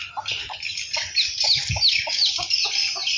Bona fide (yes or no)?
yes